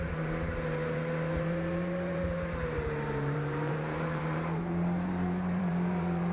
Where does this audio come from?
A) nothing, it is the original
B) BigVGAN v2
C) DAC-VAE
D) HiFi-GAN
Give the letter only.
B